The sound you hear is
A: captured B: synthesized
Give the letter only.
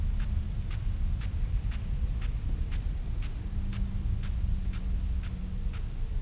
A